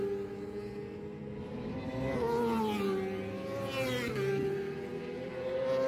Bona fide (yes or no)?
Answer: yes